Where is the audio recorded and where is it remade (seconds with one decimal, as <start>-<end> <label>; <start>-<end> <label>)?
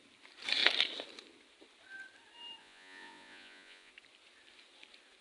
0.0-2.6 recorded; 2.6-3.9 remade; 3.9-5.2 recorded